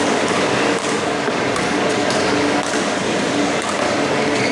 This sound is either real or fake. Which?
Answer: fake